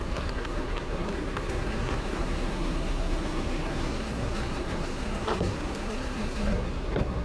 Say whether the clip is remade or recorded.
remade